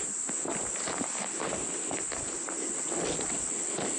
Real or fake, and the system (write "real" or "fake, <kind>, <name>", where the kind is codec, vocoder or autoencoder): real